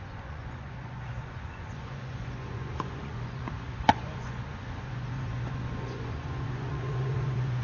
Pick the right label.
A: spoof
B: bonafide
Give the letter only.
A